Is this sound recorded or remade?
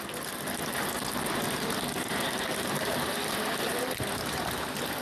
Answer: recorded